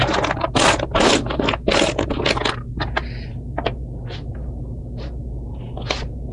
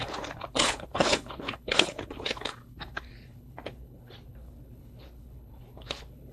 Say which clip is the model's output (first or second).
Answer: second